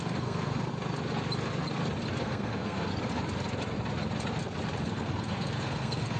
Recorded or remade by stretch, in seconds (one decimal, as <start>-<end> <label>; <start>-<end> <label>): 0.0-0.7 remade; 0.7-2.2 recorded; 2.2-2.9 remade; 2.9-4.8 recorded; 4.8-6.2 remade